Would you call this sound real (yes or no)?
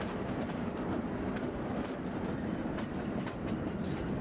no